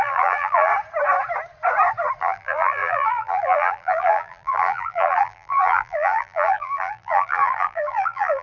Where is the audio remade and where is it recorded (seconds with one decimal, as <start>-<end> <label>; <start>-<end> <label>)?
0.0-0.7 remade; 0.7-2.2 recorded; 2.2-8.4 remade

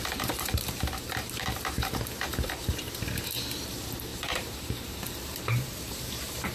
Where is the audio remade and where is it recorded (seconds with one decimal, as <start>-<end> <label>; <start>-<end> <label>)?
0.0-2.3 remade; 2.3-3.4 recorded; 3.4-6.5 remade

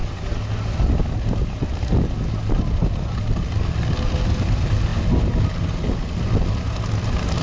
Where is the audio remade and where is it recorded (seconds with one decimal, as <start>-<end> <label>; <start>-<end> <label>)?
0.0-7.4 recorded

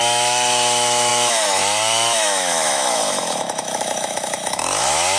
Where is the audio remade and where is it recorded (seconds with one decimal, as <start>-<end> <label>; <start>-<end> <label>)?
0.0-5.2 remade